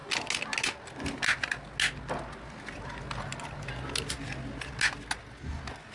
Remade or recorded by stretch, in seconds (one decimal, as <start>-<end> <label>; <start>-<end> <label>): 0.0-5.9 recorded